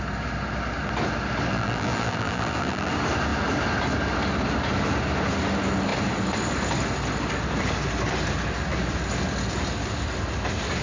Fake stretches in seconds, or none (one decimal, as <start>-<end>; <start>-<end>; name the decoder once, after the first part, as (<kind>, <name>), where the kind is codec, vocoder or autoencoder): 1.5-2.9 (vocoder, BigVGAN v2)